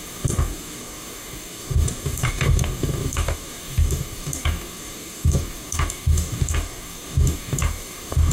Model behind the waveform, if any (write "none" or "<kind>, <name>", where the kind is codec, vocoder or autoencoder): codec, DAC